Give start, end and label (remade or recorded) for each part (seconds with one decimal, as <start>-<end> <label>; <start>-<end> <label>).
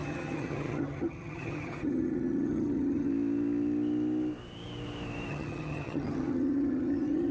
0.0-3.1 remade; 3.1-5.3 recorded; 5.3-7.3 remade